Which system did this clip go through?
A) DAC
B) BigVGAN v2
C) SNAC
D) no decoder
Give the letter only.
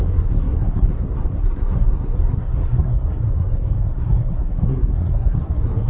C